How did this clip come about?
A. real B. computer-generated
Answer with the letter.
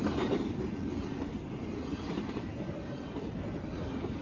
A